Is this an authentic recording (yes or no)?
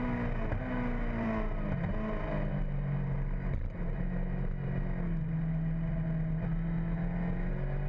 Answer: yes